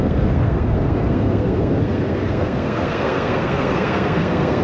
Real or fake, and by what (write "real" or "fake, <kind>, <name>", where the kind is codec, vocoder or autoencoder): fake, codec, SNAC